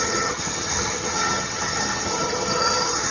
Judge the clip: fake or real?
fake